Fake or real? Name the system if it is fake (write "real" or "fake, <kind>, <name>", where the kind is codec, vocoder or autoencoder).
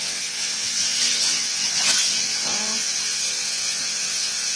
fake, vocoder, WaveNeXt